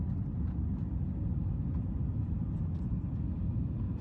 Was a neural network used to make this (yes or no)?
no